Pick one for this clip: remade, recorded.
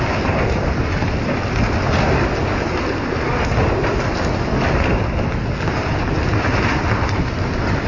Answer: recorded